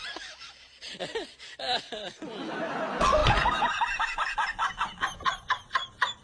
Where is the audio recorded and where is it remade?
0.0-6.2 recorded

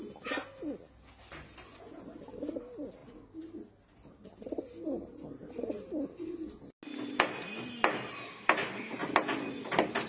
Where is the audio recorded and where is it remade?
0.0-10.1 recorded

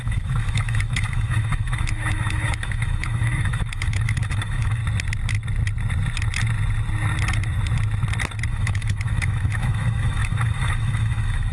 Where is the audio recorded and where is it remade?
0.0-4.8 remade; 4.8-8.5 recorded; 8.5-11.5 remade

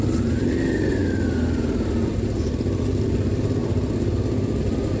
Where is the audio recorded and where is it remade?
0.0-5.0 recorded

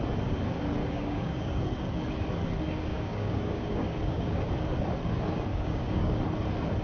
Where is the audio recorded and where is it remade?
0.0-0.8 recorded; 0.8-1.6 remade; 1.6-2.9 recorded; 2.9-4.5 remade; 4.5-5.5 recorded; 5.5-6.2 remade; 6.2-6.8 recorded

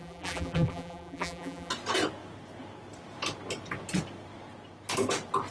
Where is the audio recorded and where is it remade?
0.0-1.7 remade; 1.7-5.5 recorded

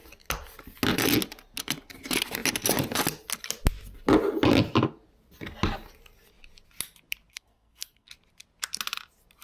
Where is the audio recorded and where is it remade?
0.0-7.3 recorded; 7.3-8.1 remade; 8.1-9.4 recorded

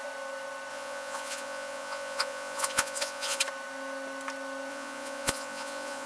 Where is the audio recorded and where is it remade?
0.0-0.7 recorded; 0.7-3.4 remade; 3.4-4.7 recorded; 4.7-6.1 remade